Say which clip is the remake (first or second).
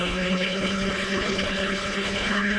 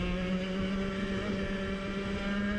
first